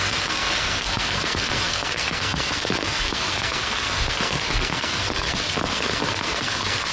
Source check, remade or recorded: remade